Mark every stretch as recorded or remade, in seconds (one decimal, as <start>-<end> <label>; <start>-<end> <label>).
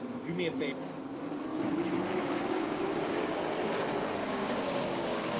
0.0-1.5 recorded; 1.5-3.4 remade; 3.4-4.2 recorded; 4.2-5.4 remade